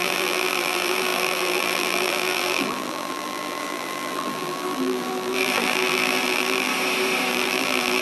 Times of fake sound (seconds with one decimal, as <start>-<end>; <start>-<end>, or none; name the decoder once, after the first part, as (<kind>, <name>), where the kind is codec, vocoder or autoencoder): 0.0-6.7 (vocoder, BigVGAN v2); 7.3-8.0